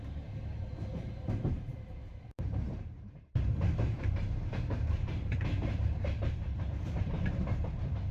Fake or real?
fake